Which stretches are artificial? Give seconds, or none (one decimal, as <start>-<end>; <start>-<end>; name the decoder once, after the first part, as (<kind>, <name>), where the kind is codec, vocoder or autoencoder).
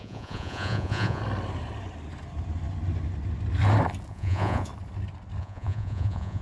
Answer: 0.0-1.2 (vocoder, Vocos); 4.1-4.7; 5.4-6.4